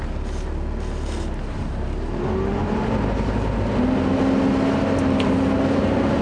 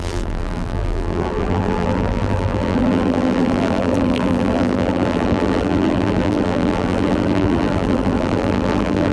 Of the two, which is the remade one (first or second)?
second